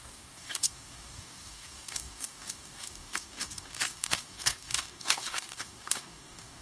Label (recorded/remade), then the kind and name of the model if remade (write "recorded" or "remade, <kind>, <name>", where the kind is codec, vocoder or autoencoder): remade, codec, DAC